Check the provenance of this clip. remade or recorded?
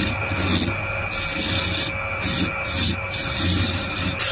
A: recorded